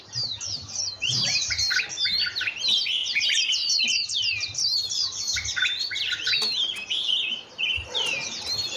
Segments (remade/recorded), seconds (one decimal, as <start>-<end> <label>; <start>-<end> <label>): 0.0-8.8 recorded